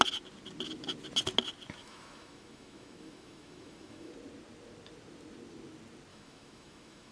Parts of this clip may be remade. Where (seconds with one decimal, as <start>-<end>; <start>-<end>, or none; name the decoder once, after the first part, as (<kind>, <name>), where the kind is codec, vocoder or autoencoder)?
1.8-4.1 (autoencoder, DAC-VAE); 6.1-7.1